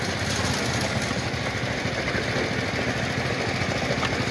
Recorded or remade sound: recorded